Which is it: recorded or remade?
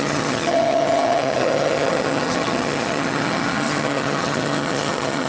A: remade